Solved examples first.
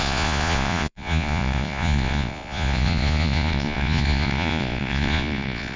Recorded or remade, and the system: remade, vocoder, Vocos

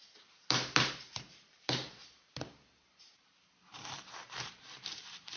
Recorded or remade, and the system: remade, vocoder, BigVGAN v2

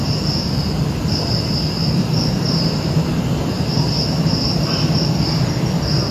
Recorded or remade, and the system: remade, vocoder, BigVGAN v2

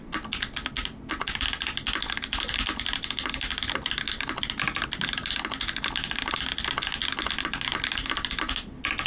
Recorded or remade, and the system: recorded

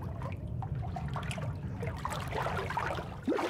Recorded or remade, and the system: recorded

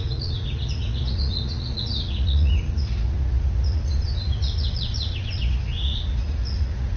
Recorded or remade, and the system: remade, vocoder, Vocos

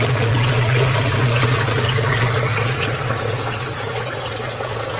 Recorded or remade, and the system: remade, vocoder, Vocos